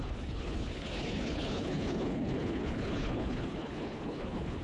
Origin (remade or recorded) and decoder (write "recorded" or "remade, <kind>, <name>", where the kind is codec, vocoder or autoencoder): remade, codec, HILCodec